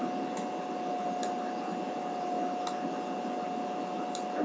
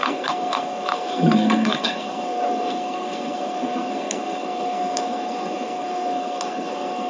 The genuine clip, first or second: first